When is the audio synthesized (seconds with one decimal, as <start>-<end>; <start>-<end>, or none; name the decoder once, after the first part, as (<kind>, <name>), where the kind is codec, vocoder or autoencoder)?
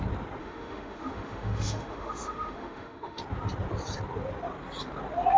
0.4-3.2 (autoencoder, DAC-VAE)